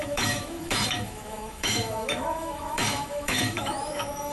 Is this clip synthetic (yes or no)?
yes